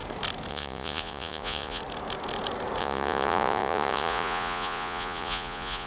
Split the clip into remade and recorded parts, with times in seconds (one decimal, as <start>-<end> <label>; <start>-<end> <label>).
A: 0.0-0.5 recorded; 0.5-1.8 remade; 1.8-2.8 recorded; 2.8-5.9 remade